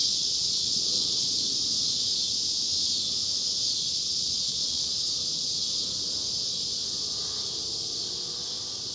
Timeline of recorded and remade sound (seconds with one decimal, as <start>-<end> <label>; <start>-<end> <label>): 0.0-1.4 remade; 1.4-4.0 recorded; 4.0-4.9 remade; 4.9-8.9 recorded

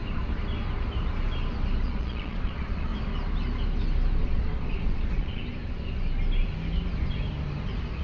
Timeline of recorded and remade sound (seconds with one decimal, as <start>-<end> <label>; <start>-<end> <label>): 0.0-1.8 recorded; 1.8-2.9 remade; 2.9-4.2 recorded; 4.2-5.4 remade; 5.4-8.0 recorded

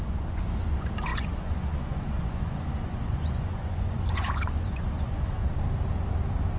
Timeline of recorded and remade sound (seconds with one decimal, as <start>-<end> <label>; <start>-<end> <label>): 0.0-5.4 remade; 5.4-6.6 recorded

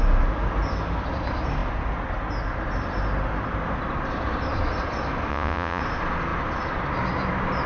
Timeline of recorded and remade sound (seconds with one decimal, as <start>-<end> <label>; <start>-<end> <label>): 0.0-5.3 recorded; 5.3-5.8 remade; 5.8-7.7 recorded

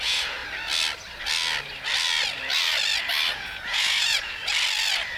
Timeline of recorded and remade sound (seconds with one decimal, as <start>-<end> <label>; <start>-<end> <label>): 0.0-0.4 remade; 0.4-3.3 recorded; 3.3-4.4 remade; 4.4-5.2 recorded

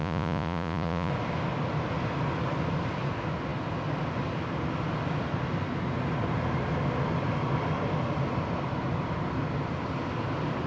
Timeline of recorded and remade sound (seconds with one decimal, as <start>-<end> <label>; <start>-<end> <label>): 0.0-1.1 remade; 1.1-10.7 recorded

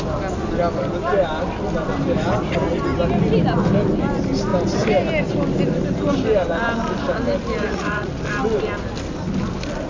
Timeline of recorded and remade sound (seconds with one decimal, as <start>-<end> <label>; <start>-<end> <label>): 0.0-7.6 recorded; 7.6-8.1 remade; 8.1-9.9 recorded

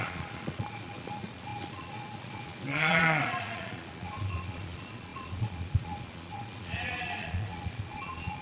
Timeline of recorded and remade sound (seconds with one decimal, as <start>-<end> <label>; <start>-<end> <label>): 0.0-8.4 remade